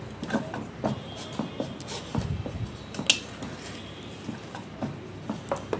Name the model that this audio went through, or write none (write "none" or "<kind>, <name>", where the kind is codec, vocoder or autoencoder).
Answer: none